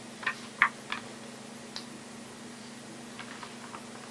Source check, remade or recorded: recorded